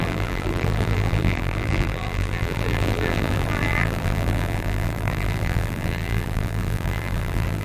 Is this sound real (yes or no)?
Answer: no